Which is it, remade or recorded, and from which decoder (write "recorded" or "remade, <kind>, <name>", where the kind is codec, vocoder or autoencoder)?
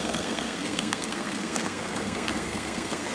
remade, codec, SNAC